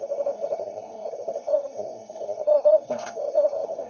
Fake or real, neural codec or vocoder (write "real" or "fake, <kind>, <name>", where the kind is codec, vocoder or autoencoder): fake, codec, SNAC